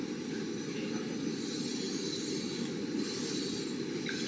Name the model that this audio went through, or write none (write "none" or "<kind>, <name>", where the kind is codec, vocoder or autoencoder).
none